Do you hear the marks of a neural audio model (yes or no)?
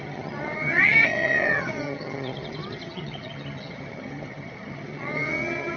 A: yes